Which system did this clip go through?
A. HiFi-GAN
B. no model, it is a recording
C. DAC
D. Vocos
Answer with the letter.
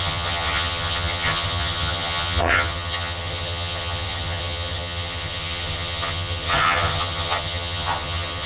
A